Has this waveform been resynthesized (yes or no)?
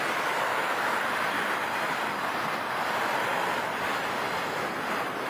no